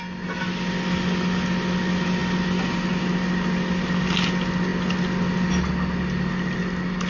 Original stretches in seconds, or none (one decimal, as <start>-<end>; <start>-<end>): 0.0-7.1